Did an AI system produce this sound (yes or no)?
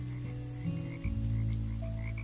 no